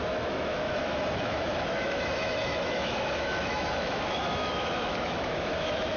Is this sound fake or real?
fake